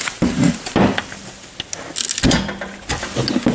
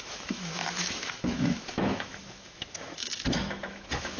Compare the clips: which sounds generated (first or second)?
second